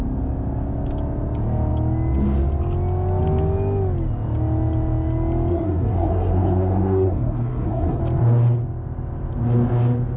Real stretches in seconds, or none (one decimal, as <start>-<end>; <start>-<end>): 0.0-5.5; 8.0-10.2